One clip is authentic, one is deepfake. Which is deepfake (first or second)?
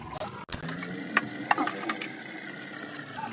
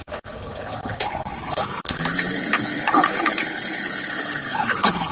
second